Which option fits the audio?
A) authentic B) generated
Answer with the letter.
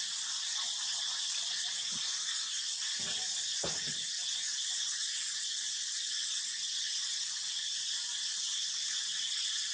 A